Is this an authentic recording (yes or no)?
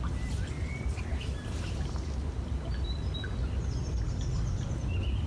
yes